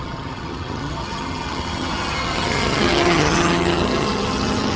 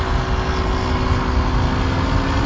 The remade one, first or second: first